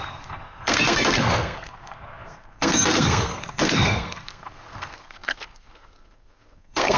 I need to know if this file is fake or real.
fake